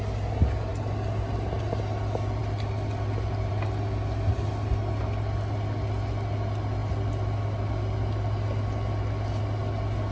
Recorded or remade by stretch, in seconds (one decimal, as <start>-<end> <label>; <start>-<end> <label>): 0.0-10.1 recorded